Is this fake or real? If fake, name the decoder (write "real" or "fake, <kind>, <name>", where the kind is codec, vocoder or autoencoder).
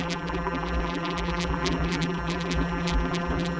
fake, vocoder, BigVGAN v2